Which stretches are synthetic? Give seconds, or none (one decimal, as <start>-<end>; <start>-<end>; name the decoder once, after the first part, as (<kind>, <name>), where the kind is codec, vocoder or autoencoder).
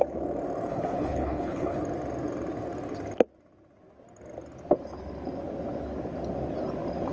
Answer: 0.7-1.8 (codec, HILCodec)